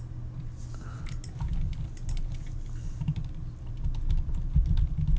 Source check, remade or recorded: recorded